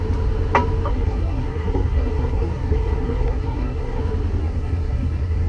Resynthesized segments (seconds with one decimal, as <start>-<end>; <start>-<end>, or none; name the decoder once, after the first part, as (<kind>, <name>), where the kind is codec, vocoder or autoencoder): 0.9-4.0 (codec, SNAC); 4.4-5.5